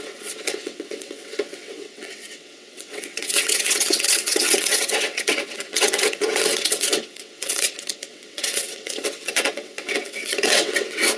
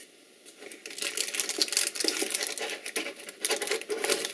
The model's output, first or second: first